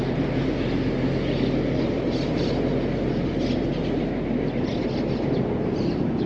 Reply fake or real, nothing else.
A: real